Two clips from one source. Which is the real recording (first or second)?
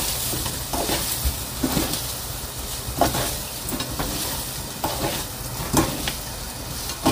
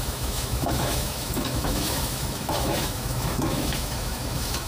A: first